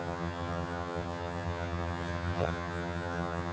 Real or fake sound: fake